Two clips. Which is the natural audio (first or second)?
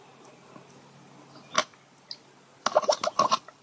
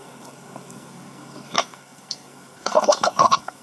first